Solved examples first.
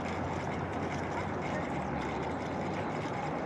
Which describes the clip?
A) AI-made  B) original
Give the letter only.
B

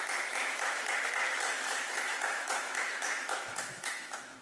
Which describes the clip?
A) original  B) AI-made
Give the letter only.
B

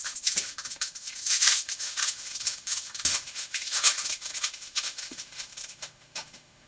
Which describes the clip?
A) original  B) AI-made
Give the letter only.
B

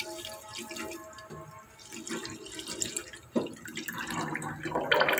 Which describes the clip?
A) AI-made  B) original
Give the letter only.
B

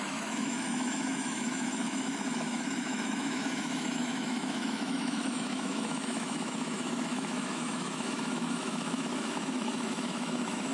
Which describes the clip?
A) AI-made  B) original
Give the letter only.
A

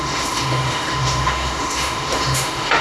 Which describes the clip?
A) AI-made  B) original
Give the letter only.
A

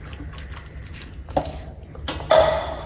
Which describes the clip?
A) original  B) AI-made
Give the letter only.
A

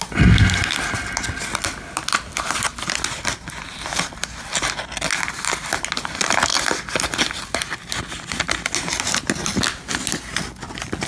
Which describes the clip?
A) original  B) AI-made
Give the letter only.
A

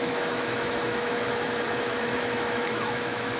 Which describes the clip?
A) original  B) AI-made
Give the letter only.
B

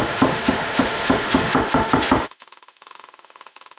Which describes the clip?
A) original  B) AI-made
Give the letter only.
B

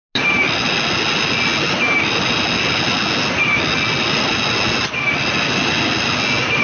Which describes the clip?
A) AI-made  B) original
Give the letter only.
B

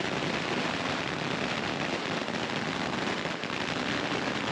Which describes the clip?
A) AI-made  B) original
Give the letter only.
B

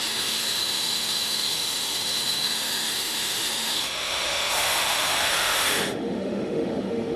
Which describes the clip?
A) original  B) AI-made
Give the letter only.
B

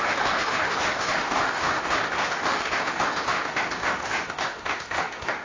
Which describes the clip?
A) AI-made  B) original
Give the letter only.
A